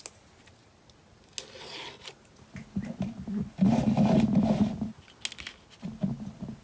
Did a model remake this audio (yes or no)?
no